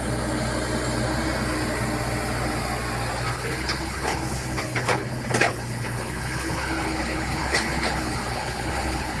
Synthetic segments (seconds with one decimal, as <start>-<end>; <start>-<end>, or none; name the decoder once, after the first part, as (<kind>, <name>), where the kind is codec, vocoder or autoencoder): 3.3-9.2 (codec, HILCodec)

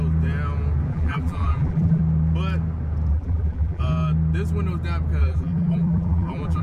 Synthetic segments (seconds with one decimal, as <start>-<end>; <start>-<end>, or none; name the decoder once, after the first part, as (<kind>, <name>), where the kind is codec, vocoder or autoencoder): 0.9-2.0 (vocoder, BigVGAN v2); 3.1-3.8; 5.2-6.6

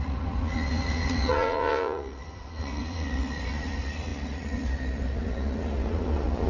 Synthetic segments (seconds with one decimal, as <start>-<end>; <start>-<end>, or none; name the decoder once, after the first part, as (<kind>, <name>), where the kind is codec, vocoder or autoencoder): 0.0-6.5 (vocoder, Vocos)

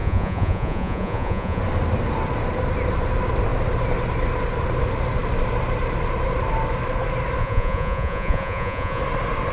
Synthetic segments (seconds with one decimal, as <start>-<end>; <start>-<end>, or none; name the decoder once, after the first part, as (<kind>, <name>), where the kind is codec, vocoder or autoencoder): 0.0-1.6 (vocoder, Vocos); 7.4-9.0

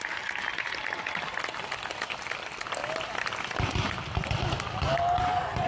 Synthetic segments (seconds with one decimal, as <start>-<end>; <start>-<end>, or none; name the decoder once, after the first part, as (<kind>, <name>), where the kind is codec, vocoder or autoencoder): 0.0-2.8 (vocoder, BigVGAN v2); 3.5-5.7

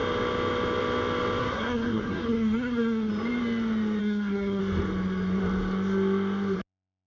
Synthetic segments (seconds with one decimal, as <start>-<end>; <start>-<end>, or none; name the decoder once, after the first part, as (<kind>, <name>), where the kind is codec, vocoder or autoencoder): 1.4-3.1 (codec, SNAC); 4.0-4.6

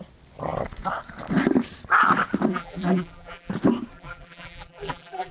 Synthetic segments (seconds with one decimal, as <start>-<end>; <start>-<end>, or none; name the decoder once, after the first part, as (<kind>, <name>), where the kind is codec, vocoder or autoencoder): 2.5-3.5 (vocoder, BigVGAN v2); 3.9-5.3

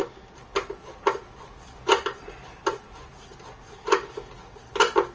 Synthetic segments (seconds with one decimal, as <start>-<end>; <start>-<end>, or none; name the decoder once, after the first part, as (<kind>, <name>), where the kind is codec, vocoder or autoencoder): none